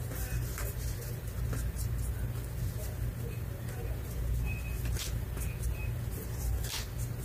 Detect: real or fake real